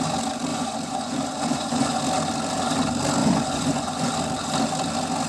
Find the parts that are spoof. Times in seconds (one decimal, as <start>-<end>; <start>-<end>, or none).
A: 0.5-2.0; 3.2-4.1

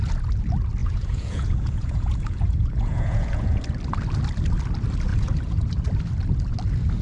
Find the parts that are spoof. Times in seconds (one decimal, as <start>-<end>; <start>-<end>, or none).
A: 0.8-3.6; 5.1-5.7

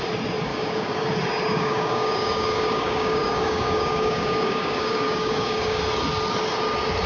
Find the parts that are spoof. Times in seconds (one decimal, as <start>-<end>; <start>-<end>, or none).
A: 0.5-1.1; 1.5-5.8

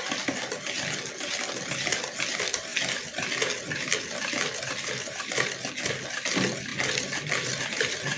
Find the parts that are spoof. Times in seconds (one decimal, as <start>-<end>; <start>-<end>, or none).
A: none

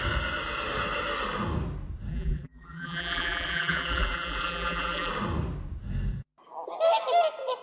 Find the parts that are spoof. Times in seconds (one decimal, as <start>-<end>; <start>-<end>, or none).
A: 2.1-5.1